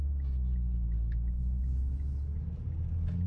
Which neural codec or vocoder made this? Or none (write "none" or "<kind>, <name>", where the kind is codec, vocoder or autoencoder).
none